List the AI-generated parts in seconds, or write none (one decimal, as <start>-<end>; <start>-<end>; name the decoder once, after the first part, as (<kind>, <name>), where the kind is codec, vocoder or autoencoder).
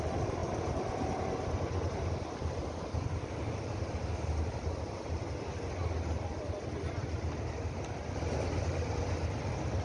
none